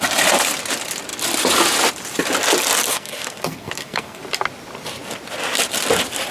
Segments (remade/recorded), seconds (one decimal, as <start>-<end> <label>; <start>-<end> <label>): 0.0-2.9 recorded; 2.9-4.2 remade; 4.2-6.3 recorded